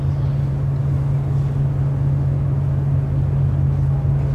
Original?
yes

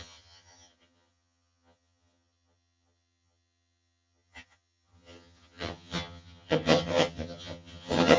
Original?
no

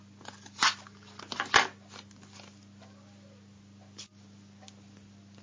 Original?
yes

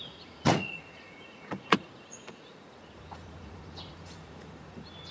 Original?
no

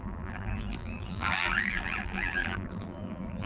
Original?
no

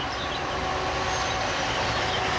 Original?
yes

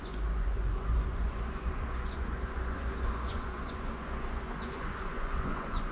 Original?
no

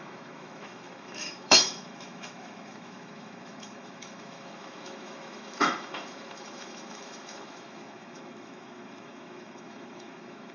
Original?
no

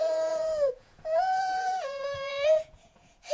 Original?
no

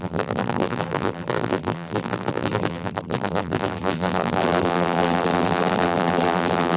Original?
no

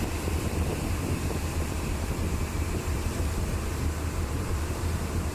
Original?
no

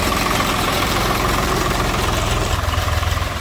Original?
no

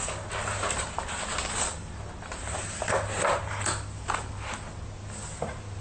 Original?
yes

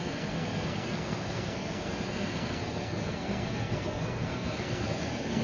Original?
no